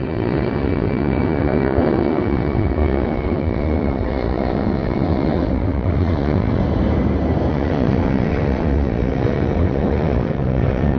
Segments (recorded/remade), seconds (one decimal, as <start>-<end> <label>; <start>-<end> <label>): 0.0-6.6 remade; 6.6-7.5 recorded; 7.5-11.0 remade